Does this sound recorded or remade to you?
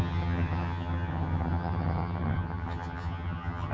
remade